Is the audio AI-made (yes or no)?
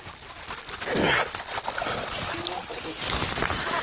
no